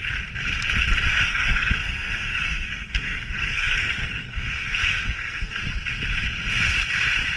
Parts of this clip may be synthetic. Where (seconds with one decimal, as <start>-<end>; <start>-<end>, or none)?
1.3-5.6